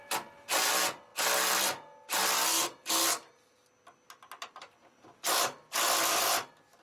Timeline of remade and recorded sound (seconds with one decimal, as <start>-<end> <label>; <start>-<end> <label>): 0.0-6.8 recorded